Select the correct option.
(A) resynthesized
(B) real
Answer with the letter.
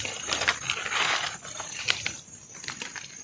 A